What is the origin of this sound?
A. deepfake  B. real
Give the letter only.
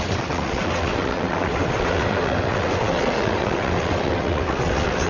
A